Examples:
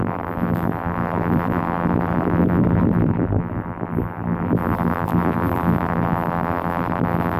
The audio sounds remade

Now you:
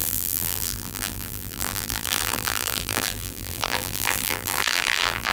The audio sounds remade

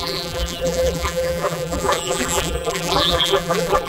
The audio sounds remade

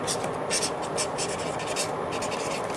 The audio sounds recorded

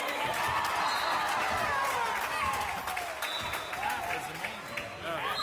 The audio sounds recorded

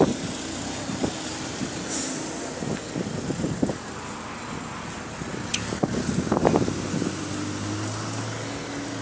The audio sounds recorded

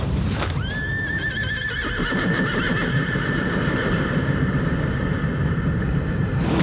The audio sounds remade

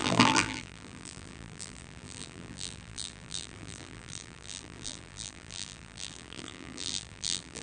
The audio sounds remade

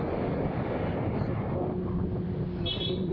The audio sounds recorded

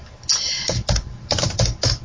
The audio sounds recorded